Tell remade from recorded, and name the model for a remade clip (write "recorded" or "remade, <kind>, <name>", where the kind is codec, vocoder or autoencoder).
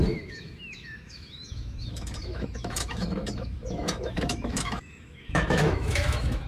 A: remade, autoencoder, DAC-VAE